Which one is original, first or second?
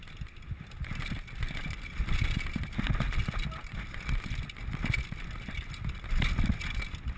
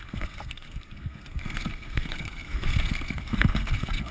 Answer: first